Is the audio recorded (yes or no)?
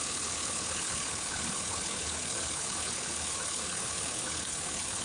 no